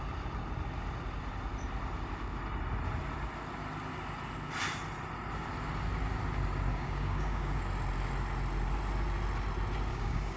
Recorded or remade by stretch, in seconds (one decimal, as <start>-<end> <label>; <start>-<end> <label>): 0.0-6.7 recorded; 6.7-7.6 remade; 7.6-9.9 recorded; 9.9-10.4 remade

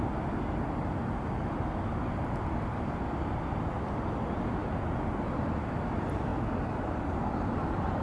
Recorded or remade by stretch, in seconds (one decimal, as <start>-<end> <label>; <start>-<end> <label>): 0.0-8.0 recorded

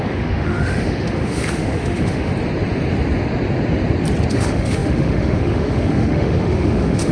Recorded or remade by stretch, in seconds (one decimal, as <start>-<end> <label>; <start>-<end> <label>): 0.0-2.3 remade; 2.3-4.3 recorded; 4.3-7.1 remade

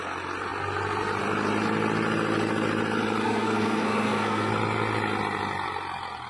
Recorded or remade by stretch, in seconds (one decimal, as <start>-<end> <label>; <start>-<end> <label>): 0.0-3.2 recorded; 3.2-4.5 remade; 4.5-6.3 recorded

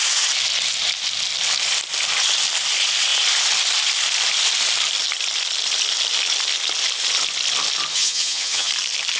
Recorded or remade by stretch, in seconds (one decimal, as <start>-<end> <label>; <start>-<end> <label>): 0.0-7.9 recorded; 7.9-8.7 remade; 8.7-9.2 recorded

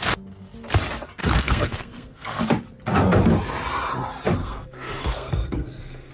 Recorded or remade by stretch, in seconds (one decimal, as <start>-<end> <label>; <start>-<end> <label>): 0.0-1.2 recorded; 1.2-2.4 remade; 2.4-4.4 recorded; 4.4-6.1 remade

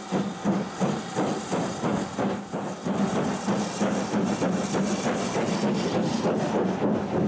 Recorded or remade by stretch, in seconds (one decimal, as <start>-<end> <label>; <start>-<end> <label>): 0.0-7.3 recorded